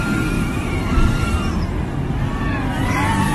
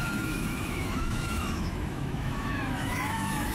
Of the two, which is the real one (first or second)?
first